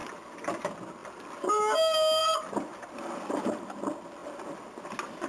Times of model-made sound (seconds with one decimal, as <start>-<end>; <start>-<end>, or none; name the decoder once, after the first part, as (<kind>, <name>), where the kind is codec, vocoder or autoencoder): 0.0-0.6 (vocoder, BigVGAN v2); 1.0-1.6; 2.2-3.4; 4.2-4.8